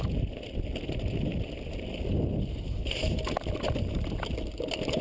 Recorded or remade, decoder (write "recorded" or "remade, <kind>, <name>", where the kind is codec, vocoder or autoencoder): recorded